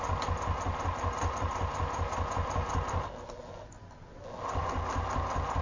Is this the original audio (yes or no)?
yes